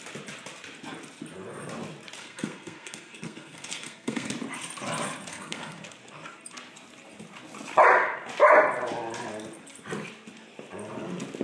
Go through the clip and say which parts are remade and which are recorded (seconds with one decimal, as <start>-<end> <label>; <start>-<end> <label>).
0.0-2.2 recorded; 2.2-4.3 remade; 4.3-5.3 recorded; 5.3-5.8 remade; 5.8-11.4 recorded